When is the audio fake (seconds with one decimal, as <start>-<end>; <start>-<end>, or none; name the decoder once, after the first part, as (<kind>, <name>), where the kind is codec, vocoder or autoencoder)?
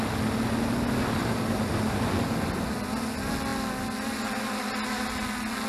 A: 1.2-2.1 (vocoder, BigVGAN v2)